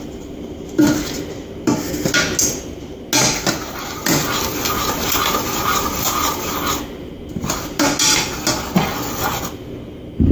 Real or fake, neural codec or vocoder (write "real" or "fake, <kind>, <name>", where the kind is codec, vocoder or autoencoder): real